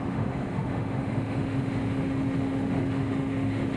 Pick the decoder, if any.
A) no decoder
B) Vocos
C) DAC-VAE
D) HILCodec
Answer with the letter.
C